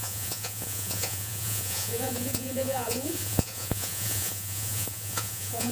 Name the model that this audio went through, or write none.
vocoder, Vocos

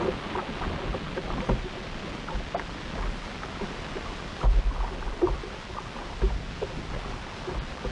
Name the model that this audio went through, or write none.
none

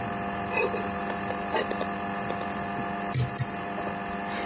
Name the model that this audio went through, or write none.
none